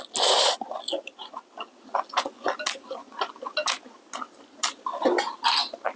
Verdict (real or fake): real